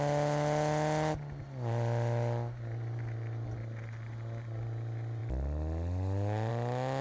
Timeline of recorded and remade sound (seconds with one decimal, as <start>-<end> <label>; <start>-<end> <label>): 0.0-7.0 recorded